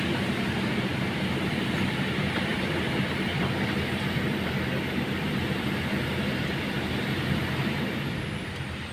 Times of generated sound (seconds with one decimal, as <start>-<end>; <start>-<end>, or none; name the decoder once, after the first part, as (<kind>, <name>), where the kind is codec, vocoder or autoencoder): 0.9-1.6 (vocoder, BigVGAN v2); 2.5-4.5